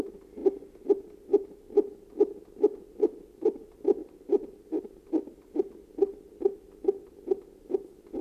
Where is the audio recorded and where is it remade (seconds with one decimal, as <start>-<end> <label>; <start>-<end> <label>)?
0.0-4.0 recorded; 4.0-4.8 remade; 4.8-8.2 recorded